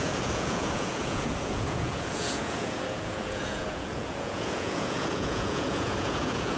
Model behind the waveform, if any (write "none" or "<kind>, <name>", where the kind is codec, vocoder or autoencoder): vocoder, Vocos